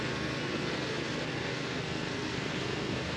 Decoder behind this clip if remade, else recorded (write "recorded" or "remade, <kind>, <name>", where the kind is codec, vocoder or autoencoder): remade, codec, SNAC